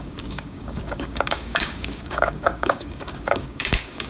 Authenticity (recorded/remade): remade